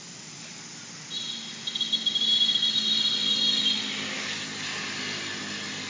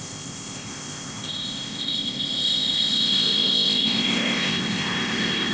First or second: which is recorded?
first